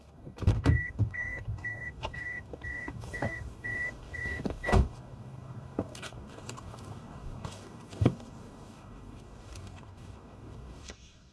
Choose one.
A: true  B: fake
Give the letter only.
B